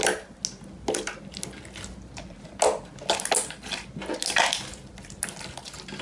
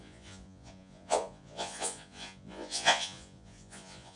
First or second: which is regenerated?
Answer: second